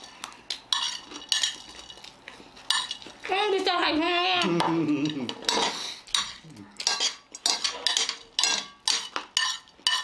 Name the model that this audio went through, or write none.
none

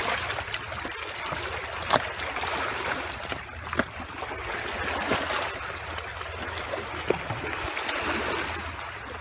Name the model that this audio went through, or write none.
none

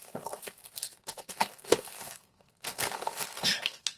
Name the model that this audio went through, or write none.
codec, SNAC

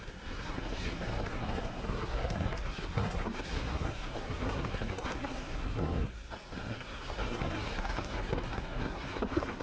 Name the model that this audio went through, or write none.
codec, SNAC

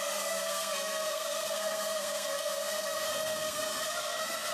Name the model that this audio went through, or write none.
codec, SNAC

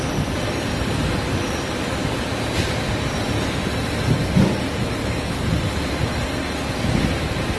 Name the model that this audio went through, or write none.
none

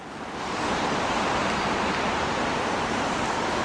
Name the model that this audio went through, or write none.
none